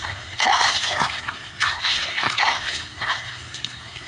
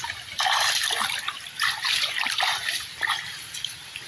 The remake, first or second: first